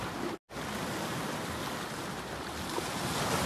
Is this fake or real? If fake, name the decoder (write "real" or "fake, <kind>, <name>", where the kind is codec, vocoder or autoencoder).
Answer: real